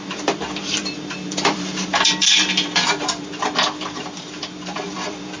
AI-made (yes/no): yes